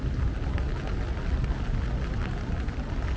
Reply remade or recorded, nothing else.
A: recorded